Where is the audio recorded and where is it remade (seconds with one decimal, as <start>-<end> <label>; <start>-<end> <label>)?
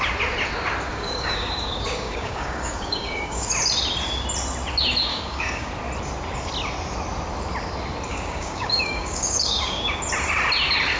0.0-0.9 recorded; 0.9-3.5 remade; 3.5-5.1 recorded; 5.1-5.7 remade; 5.7-8.1 recorded; 8.1-10.0 remade; 10.0-11.0 recorded